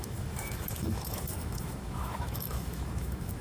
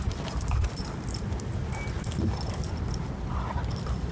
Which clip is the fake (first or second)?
first